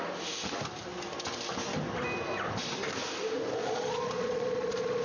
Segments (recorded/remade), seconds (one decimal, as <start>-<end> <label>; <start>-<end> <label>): 0.0-3.6 recorded; 3.6-5.0 remade